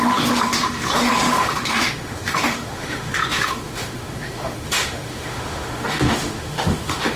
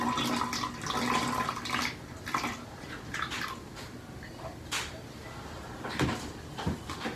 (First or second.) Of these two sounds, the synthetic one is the first